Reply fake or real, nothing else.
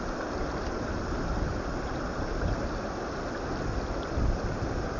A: real